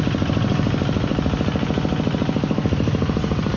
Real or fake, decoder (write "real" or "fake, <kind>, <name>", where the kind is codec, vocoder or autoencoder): real